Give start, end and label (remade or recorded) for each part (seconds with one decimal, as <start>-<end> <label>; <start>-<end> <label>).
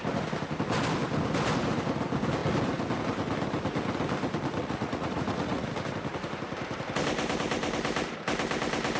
0.0-4.6 recorded; 4.6-5.7 remade; 5.7-9.0 recorded